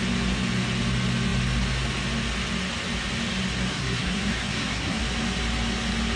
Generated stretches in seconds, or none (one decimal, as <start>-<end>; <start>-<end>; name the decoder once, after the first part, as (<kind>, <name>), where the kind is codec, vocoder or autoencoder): 3.7-5.0 (codec, SNAC)